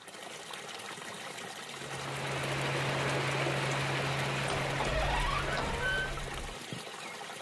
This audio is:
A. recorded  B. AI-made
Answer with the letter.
A